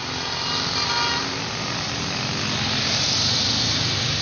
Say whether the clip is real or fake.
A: real